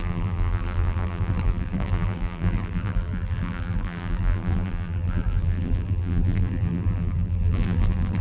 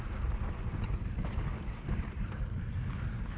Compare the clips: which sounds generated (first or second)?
first